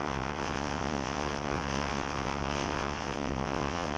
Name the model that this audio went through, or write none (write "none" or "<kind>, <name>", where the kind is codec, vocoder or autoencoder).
vocoder, WaveNeXt